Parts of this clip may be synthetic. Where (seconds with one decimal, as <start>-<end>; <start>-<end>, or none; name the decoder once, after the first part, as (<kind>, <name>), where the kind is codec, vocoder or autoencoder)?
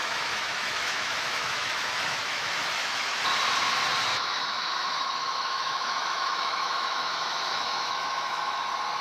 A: 0.0-3.2 (autoencoder, DAC-VAE); 4.1-8.6